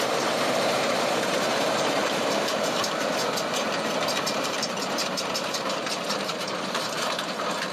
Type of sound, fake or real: fake